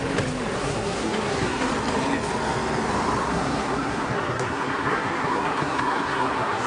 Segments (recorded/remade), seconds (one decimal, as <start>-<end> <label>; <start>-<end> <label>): 0.0-0.6 recorded; 0.6-1.7 remade; 1.7-3.2 recorded; 3.2-6.7 remade